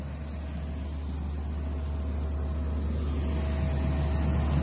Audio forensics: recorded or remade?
recorded